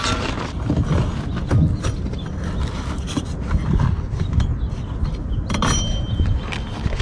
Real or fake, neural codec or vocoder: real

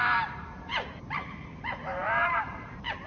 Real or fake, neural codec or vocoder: fake, vocoder, BigVGAN v2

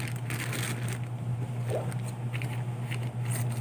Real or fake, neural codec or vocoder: real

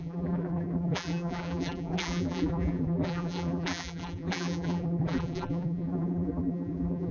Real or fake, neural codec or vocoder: fake, vocoder, BigVGAN v2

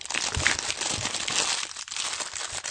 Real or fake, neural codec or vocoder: real